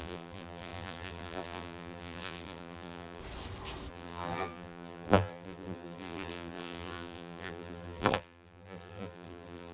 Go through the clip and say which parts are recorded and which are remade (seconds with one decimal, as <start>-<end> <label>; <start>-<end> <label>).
0.0-3.2 remade; 3.2-3.9 recorded; 3.9-9.7 remade